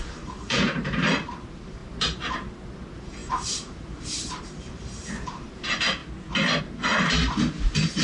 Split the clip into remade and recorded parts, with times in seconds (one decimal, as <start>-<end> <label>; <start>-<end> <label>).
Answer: 0.0-1.8 remade; 1.8-2.7 recorded; 2.7-6.0 remade; 6.0-6.6 recorded; 6.6-8.0 remade